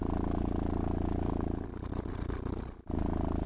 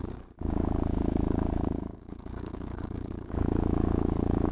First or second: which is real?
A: first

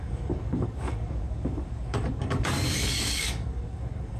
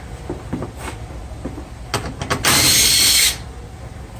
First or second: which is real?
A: second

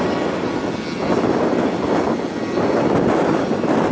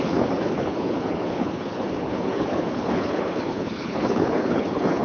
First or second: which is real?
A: first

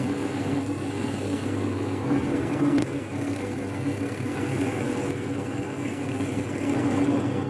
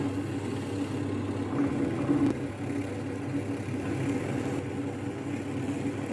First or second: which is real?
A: second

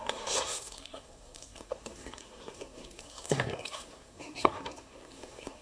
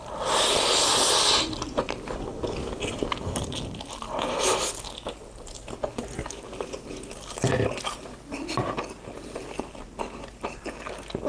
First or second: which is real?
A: second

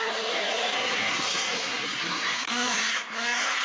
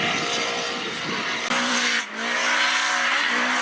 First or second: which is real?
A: second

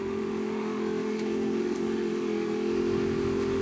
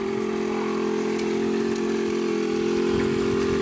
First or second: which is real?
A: second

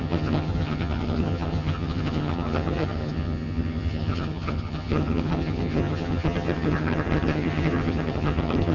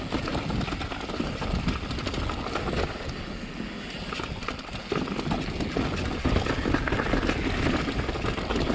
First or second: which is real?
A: second